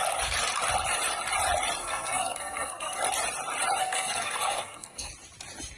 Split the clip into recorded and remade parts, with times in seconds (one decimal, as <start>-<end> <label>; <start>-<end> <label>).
0.0-1.8 recorded; 1.8-3.0 remade; 3.0-3.8 recorded; 3.8-5.1 remade; 5.1-5.8 recorded